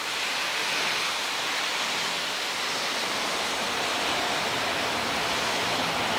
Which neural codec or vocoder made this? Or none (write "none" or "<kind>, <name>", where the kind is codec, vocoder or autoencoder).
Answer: none